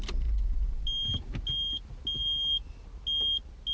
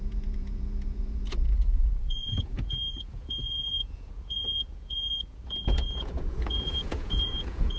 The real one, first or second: first